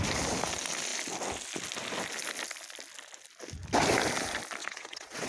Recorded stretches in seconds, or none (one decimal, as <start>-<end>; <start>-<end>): 0.0-4.6